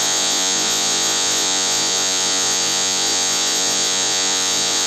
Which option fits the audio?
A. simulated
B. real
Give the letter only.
A